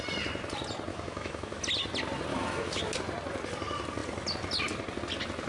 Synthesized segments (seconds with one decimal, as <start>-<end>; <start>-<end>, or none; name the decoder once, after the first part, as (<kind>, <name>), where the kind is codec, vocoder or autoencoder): 0.9-1.6 (autoencoder, DAC-VAE); 2.3-2.8